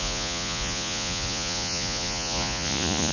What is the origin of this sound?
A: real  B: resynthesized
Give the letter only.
B